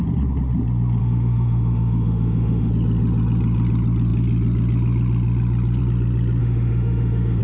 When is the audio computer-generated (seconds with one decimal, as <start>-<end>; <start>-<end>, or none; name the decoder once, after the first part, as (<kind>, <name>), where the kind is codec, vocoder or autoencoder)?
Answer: 1.0-2.7 (autoencoder, DAC-VAE); 6.4-7.4